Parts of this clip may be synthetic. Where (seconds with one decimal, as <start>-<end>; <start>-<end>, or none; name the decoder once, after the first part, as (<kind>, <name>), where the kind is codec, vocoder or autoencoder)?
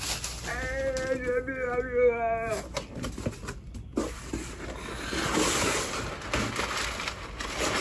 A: none